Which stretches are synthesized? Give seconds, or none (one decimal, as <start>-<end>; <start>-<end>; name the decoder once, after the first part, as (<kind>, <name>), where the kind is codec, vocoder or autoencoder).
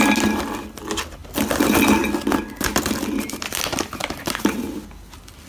4.0-4.6 (vocoder, BigVGAN v2)